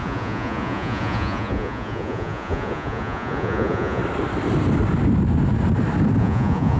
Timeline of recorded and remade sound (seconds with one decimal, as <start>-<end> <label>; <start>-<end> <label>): 0.0-4.0 remade; 4.0-6.2 recorded; 6.2-6.8 remade